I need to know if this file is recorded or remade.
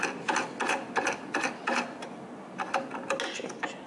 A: recorded